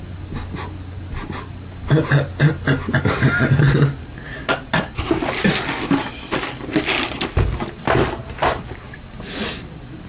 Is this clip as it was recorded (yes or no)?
yes